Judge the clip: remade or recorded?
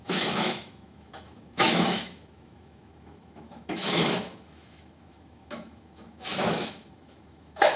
remade